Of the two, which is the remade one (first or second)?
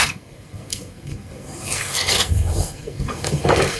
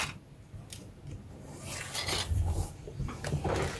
first